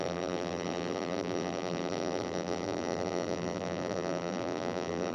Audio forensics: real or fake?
fake